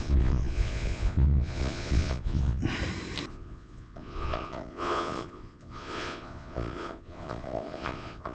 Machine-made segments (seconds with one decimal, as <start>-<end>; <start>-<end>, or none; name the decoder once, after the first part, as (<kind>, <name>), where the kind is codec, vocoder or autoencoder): 0.0-2.6 (vocoder, Vocos); 3.3-8.3